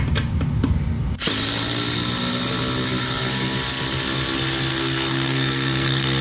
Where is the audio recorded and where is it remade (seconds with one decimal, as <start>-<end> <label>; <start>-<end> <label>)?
0.0-4.7 recorded; 4.7-6.2 remade